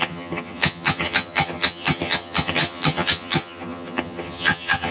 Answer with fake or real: fake